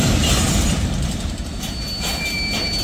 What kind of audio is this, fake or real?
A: real